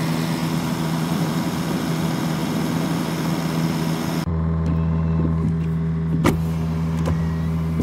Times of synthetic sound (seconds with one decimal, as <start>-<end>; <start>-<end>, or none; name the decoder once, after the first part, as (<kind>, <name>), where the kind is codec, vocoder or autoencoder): 0.4-1.9 (vocoder, BigVGAN v2)